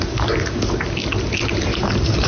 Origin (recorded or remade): recorded